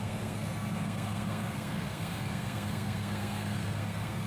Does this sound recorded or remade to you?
remade